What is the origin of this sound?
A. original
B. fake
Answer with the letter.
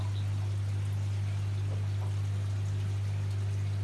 A